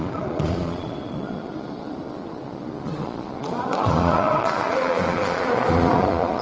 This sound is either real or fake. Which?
fake